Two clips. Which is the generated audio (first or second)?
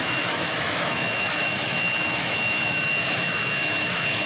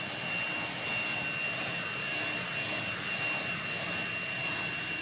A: first